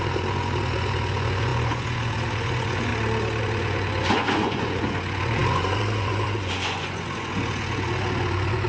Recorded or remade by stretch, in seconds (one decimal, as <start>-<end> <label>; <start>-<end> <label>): 0.0-2.9 remade; 2.9-3.4 recorded; 3.4-8.7 remade